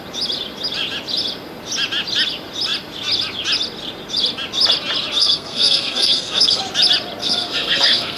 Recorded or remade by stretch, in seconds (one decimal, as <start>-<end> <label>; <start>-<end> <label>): 0.0-5.2 recorded; 5.2-6.6 remade; 6.6-7.2 recorded; 7.2-8.2 remade